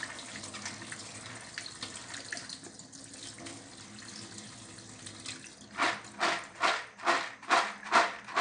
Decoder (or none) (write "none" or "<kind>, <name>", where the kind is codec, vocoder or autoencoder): none